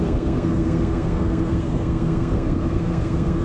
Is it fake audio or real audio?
fake